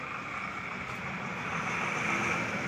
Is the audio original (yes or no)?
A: yes